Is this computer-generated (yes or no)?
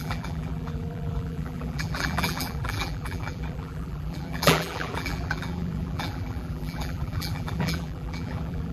yes